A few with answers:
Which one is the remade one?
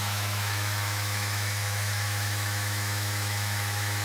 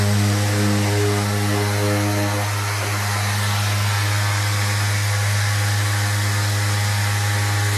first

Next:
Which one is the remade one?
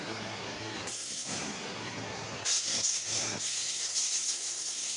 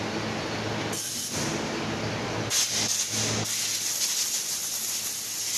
first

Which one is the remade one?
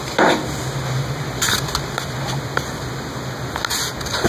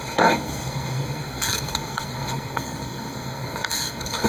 second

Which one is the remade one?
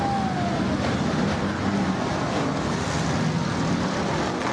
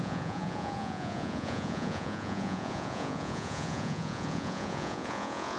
second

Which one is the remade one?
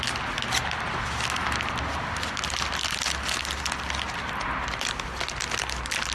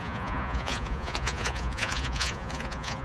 second